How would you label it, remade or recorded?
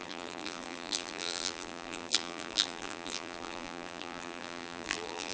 remade